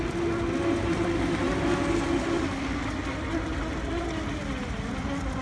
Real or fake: real